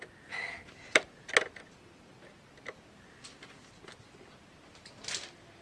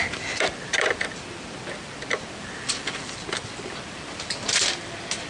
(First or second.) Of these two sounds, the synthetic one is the second